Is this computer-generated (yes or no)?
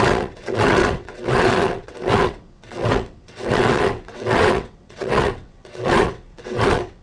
yes